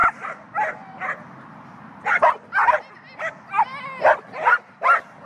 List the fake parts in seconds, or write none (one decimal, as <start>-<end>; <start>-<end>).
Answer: none